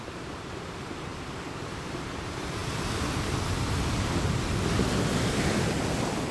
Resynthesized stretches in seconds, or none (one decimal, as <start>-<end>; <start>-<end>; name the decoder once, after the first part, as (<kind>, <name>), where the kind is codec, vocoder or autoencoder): none